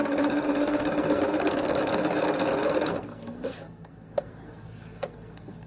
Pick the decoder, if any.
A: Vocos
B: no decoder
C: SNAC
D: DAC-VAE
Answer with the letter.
C